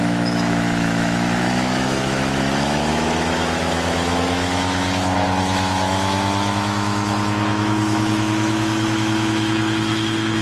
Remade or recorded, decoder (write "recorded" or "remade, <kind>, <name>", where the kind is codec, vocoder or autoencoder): remade, autoencoder, DAC-VAE